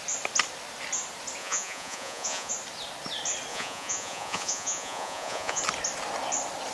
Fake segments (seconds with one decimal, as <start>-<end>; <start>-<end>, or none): 1.4-2.5; 3.5-5.6